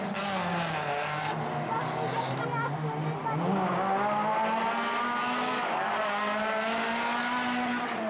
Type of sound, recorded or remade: recorded